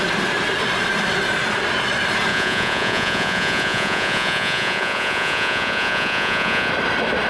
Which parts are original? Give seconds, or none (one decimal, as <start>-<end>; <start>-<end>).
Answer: 0.0-2.3; 6.7-7.3